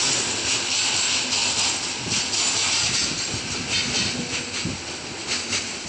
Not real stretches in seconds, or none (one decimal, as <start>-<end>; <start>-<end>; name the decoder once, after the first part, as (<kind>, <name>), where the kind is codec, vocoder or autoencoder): none